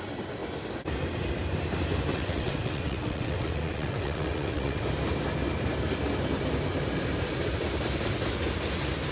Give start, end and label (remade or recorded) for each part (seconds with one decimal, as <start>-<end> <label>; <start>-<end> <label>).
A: 0.0-2.1 recorded; 2.1-4.8 remade; 4.8-9.1 recorded